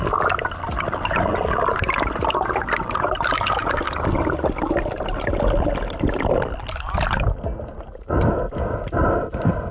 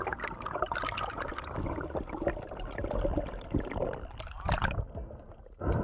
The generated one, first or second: second